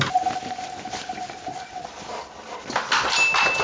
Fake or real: real